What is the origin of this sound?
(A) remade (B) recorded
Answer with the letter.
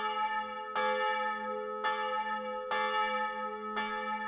B